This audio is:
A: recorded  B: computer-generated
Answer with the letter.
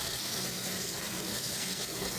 B